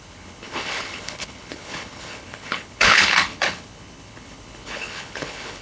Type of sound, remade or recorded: remade